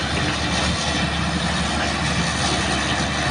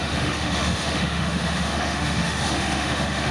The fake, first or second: second